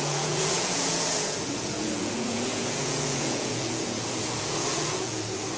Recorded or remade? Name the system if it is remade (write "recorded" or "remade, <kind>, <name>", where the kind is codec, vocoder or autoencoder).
remade, vocoder, Vocos